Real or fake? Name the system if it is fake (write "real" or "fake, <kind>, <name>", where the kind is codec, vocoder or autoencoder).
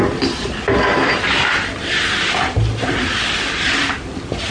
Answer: real